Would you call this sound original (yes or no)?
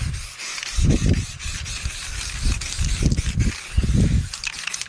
yes